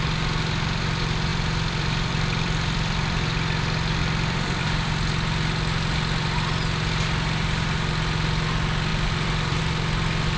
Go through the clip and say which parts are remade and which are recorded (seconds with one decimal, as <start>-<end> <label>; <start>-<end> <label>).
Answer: 0.0-1.3 recorded; 1.3-3.2 remade; 3.2-4.0 recorded; 4.0-4.6 remade; 4.6-8.9 recorded; 8.9-9.6 remade; 9.6-10.4 recorded